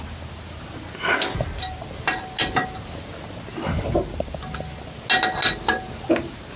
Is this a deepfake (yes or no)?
no